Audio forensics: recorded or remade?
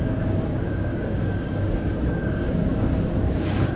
remade